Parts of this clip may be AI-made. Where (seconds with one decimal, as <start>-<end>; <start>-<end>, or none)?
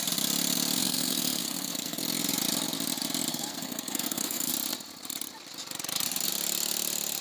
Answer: 0.8-2.0; 3.3-4.5